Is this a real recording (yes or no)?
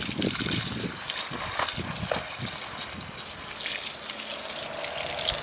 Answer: yes